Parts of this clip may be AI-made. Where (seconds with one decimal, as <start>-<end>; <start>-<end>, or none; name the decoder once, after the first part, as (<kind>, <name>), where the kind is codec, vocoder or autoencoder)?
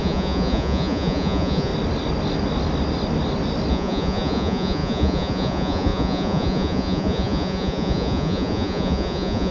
0.0-1.7 (vocoder, Vocos); 3.7-9.5